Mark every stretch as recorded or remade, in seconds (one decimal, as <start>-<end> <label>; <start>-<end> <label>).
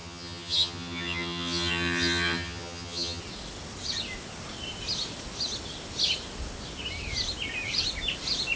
0.0-3.2 remade; 3.2-8.6 recorded